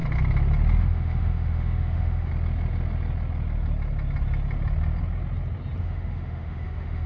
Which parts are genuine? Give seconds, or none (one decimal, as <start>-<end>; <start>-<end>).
0.0-0.8; 2.3-5.8